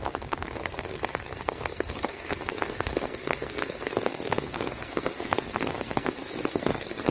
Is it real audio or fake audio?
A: fake